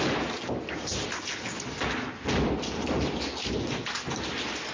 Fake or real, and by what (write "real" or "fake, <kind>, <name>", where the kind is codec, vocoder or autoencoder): real